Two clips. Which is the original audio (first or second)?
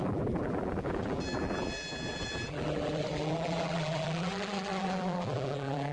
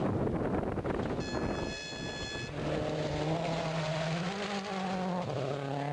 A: second